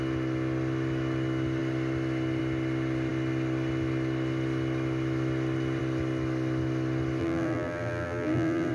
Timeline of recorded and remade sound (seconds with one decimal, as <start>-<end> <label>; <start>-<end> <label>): 0.0-7.2 recorded; 7.2-8.7 remade